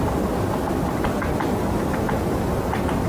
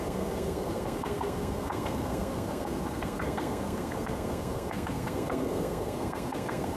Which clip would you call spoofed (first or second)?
second